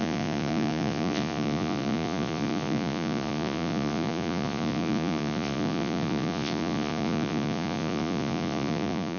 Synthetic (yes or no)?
yes